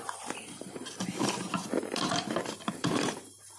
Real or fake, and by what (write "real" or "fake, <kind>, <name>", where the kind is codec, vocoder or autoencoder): fake, vocoder, BigVGAN v2